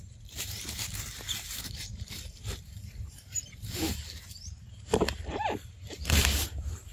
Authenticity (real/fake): fake